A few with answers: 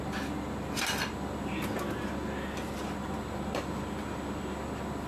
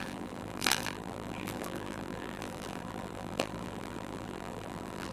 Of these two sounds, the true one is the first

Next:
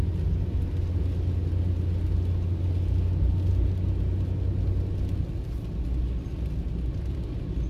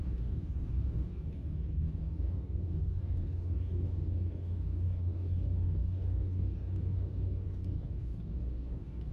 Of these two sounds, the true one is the first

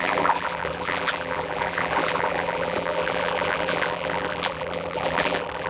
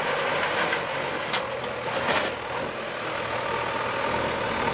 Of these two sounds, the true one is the second